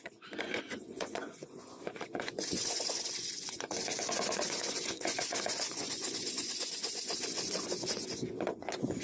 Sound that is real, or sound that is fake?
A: fake